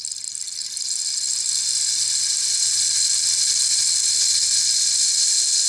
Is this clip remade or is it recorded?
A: recorded